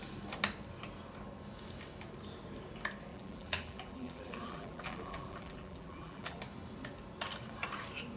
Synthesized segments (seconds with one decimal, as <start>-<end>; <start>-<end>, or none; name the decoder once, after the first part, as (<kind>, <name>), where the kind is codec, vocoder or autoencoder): 3.1-6.4 (vocoder, BigVGAN v2)